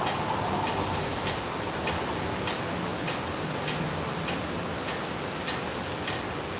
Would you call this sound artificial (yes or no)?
no